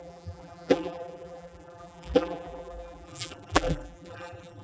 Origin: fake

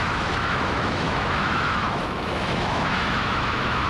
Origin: fake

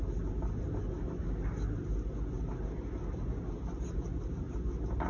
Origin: real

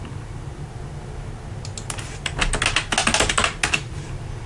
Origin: real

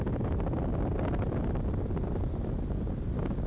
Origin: real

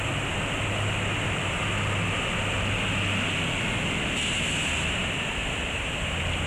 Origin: real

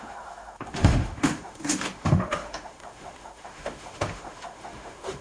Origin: fake